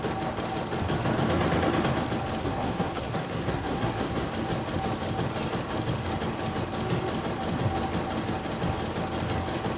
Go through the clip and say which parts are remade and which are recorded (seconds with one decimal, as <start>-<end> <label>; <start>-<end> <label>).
0.0-2.4 recorded; 2.4-4.3 remade; 4.3-9.8 recorded